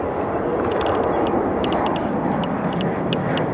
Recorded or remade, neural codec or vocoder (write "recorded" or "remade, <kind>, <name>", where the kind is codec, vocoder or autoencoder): recorded